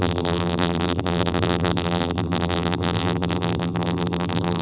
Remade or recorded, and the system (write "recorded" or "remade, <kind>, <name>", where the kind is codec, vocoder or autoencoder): remade, vocoder, BigVGAN v2